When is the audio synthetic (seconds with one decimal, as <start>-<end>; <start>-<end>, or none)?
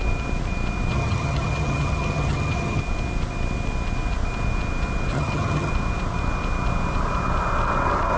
0.9-2.8; 5.1-5.7